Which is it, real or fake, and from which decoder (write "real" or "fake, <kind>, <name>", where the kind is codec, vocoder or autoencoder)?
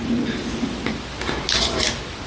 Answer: real